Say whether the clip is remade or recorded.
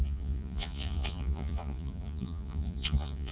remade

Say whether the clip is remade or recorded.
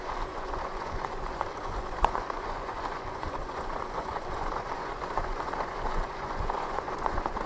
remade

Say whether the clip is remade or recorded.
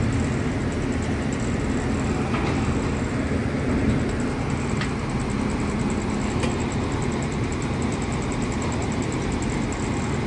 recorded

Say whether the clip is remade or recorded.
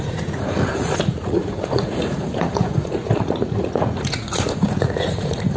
remade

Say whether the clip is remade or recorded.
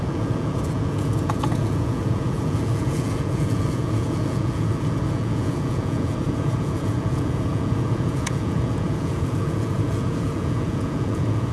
remade